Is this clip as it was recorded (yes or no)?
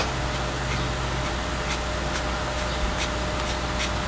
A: yes